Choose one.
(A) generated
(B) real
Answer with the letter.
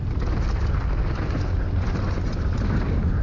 B